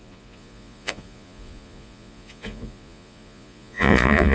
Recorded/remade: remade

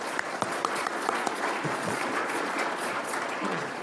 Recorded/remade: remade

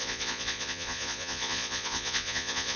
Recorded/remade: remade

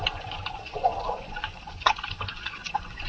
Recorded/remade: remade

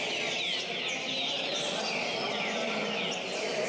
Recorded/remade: recorded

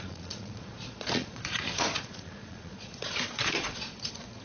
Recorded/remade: remade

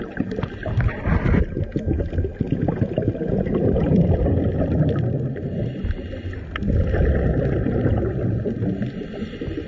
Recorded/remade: recorded